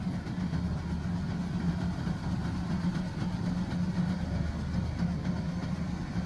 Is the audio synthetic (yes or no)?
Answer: no